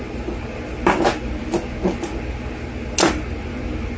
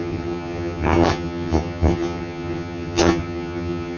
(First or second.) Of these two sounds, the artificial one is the second